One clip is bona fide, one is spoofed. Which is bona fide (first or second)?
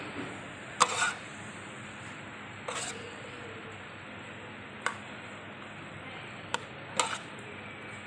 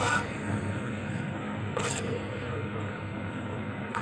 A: first